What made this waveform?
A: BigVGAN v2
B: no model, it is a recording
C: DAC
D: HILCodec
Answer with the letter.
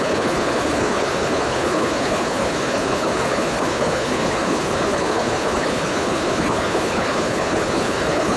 D